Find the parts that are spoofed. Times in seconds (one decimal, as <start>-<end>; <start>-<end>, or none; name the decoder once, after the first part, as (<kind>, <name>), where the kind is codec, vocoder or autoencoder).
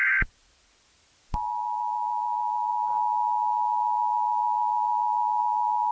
none